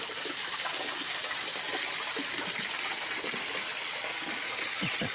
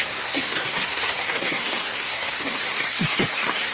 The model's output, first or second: second